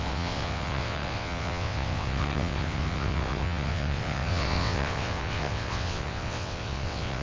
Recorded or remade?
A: remade